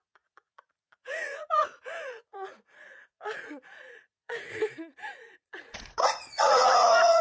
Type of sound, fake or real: fake